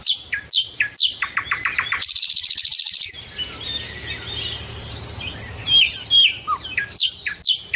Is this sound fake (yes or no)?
no